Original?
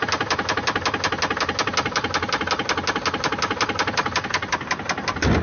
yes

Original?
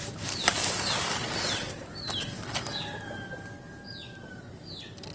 yes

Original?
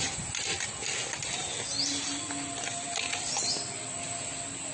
yes